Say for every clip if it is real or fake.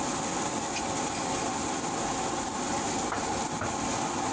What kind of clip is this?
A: real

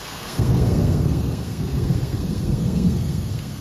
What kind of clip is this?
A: fake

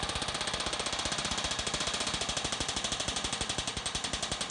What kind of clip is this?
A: real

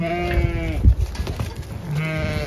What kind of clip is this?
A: real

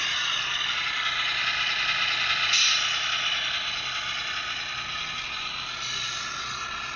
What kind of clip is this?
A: real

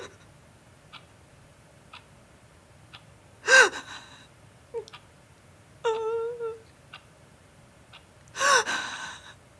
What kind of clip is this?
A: real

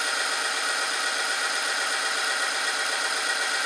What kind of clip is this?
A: real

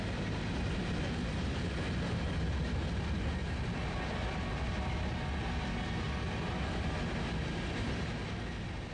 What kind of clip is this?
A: real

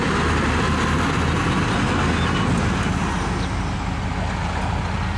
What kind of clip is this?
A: real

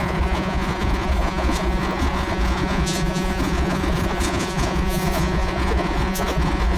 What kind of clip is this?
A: fake